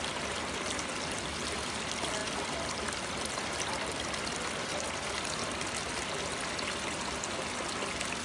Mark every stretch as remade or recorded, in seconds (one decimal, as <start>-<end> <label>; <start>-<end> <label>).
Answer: 0.0-2.2 recorded; 2.2-4.9 remade; 4.9-8.2 recorded